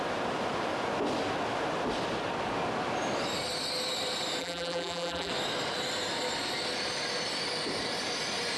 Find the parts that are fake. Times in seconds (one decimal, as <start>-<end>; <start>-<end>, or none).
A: 4.4-5.3